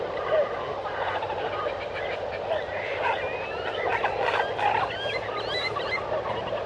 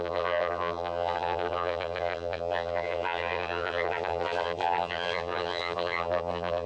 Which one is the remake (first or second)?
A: second